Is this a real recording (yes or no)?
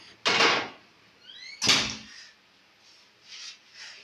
yes